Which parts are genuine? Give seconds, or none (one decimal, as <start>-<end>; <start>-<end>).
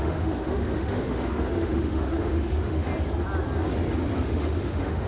2.9-4.2